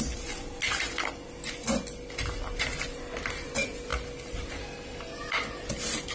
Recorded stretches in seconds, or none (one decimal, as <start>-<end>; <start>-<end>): 0.0-6.1